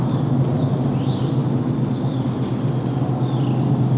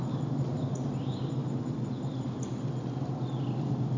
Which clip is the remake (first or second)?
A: second